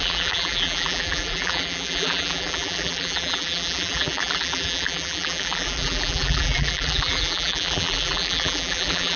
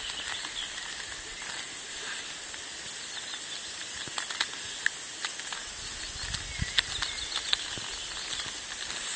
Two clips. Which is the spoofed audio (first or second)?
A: first